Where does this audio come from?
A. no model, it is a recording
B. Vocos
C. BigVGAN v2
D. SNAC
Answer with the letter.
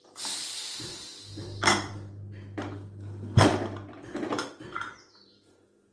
C